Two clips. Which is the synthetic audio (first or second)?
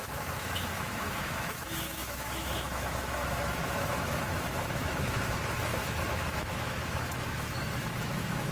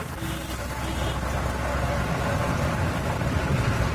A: first